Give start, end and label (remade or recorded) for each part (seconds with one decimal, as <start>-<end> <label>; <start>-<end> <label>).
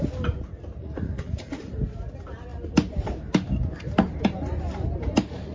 0.0-0.8 recorded; 0.8-1.7 remade; 1.7-5.5 recorded